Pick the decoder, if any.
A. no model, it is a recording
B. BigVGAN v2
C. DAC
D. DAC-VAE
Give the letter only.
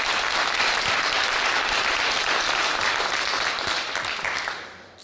B